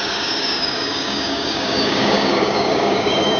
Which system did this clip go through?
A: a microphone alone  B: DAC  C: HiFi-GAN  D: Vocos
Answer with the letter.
B